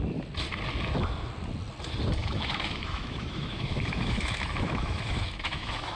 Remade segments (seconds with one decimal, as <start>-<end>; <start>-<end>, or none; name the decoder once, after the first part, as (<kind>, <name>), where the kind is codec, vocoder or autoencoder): 2.2-6.0 (autoencoder, DAC-VAE)

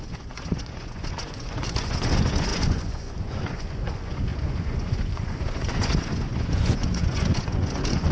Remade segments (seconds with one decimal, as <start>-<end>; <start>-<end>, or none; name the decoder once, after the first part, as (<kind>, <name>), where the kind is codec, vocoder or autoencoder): 0.0-8.1 (vocoder, Vocos)